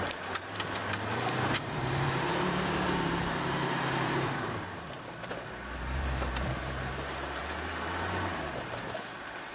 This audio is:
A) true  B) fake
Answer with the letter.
B